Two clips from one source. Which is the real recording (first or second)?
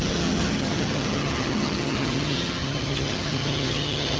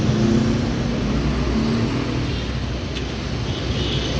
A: second